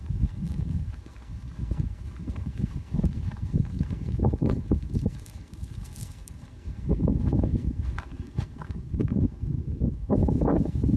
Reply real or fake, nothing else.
fake